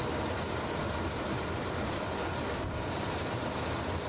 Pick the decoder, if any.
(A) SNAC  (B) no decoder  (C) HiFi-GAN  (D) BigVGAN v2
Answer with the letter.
B